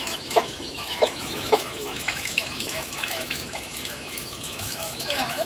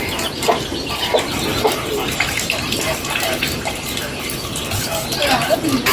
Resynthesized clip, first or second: first